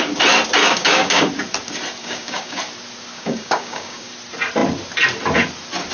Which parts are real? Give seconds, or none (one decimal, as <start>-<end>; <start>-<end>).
0.0-0.6; 1.3-2.0; 2.6-3.1; 4.1-5.9